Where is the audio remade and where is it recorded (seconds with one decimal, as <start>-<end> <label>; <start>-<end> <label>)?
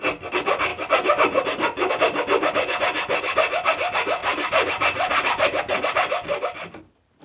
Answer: 0.0-0.7 recorded; 0.7-1.9 remade; 1.9-4.2 recorded; 4.2-5.6 remade; 5.6-7.2 recorded